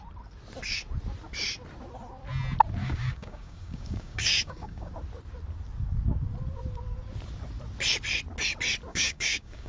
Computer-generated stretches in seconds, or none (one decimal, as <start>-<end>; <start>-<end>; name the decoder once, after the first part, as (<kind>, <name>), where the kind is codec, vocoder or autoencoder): 2.8-4.9 (codec, DAC); 8.9-9.7